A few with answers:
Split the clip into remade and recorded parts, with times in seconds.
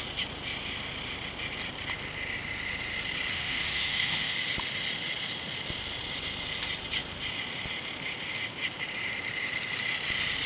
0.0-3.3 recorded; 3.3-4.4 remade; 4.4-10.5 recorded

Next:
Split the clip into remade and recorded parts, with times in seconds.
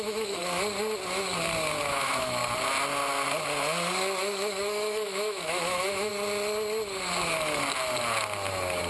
0.0-0.4 remade; 0.4-1.8 recorded; 1.8-2.4 remade; 2.4-4.2 recorded; 4.2-6.1 remade; 6.1-8.9 recorded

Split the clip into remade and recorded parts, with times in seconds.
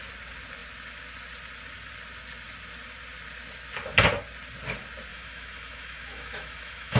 0.0-5.1 recorded; 5.1-7.0 remade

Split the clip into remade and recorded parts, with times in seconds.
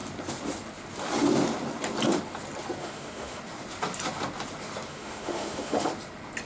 0.0-2.8 recorded; 2.8-3.4 remade; 3.4-4.9 recorded; 4.9-5.9 remade; 5.9-6.5 recorded